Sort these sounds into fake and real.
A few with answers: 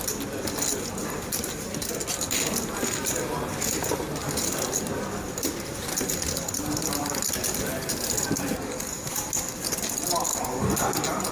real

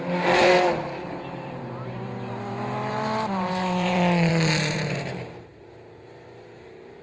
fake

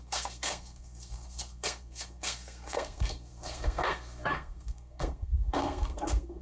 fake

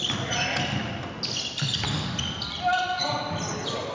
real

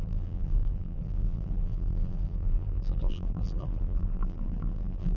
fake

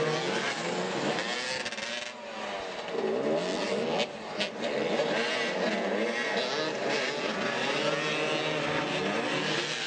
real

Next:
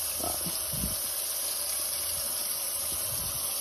real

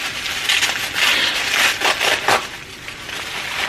real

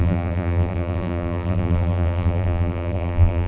fake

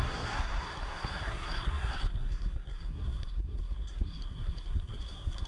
fake